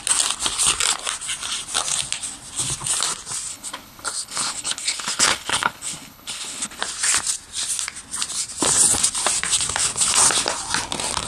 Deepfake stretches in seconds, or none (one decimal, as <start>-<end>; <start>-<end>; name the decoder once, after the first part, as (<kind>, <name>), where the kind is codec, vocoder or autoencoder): 3.5-6.8 (codec, HILCodec)